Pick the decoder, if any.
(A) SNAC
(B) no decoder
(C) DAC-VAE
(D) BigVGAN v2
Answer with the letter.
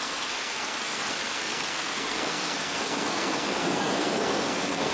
A